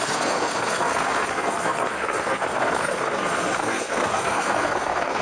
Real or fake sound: fake